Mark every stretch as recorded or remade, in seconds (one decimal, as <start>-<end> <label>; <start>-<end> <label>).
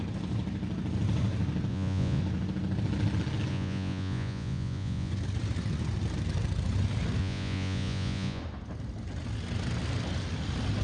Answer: 0.0-1.7 recorded; 1.7-2.2 remade; 2.2-3.5 recorded; 3.5-5.1 remade; 5.1-7.2 recorded; 7.2-8.4 remade; 8.4-10.8 recorded